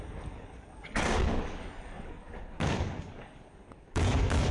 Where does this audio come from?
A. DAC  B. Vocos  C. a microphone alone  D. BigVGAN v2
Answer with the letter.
A